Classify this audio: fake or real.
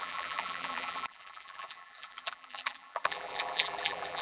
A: fake